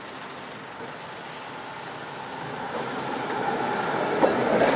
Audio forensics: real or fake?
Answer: real